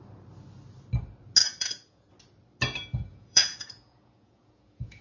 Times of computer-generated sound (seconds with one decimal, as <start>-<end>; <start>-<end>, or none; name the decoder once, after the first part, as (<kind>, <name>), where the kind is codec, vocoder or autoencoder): 1.4-2.1 (vocoder, Vocos); 3.1-5.0